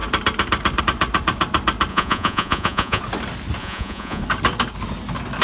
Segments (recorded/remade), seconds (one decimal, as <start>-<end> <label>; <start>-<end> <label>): 0.0-1.9 recorded; 1.9-3.0 remade; 3.0-3.6 recorded; 3.6-4.2 remade; 4.2-5.4 recorded